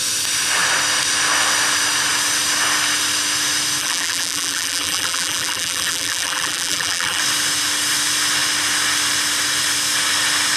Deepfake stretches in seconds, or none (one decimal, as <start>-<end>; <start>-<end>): 3.8-7.2